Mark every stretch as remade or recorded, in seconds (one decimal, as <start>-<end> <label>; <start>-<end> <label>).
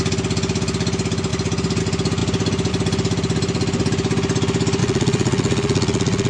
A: 0.0-4.8 recorded; 4.8-6.3 remade